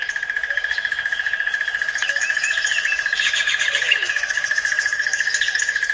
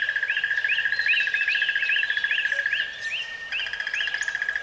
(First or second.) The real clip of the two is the second